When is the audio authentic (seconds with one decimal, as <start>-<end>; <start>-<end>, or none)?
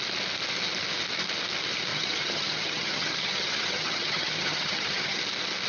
0.0-1.9; 5.2-5.7